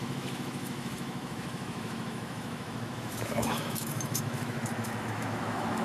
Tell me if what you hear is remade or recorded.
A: remade